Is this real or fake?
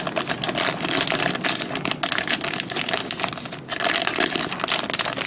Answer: real